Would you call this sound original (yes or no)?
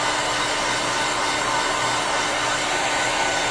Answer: yes